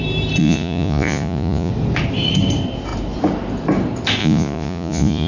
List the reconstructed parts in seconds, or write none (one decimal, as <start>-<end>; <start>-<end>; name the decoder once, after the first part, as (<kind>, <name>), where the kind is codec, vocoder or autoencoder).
0.4-1.7 (vocoder, Vocos); 4.2-5.3